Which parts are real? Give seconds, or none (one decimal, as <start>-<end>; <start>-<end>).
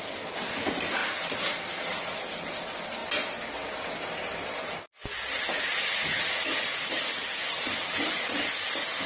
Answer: 0.0-9.1